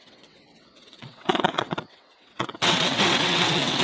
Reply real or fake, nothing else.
fake